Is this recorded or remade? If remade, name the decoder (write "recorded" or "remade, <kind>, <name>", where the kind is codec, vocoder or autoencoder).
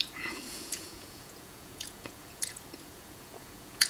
remade, vocoder, Vocos